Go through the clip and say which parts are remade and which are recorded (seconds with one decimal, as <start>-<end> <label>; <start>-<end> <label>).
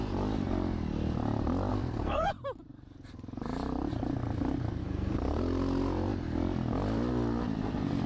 0.0-1.7 recorded; 1.7-2.3 remade; 2.3-4.8 recorded; 4.8-5.4 remade; 5.4-8.1 recorded